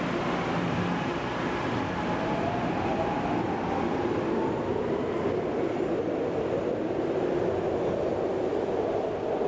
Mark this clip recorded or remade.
recorded